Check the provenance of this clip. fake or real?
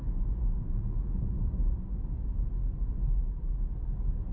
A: real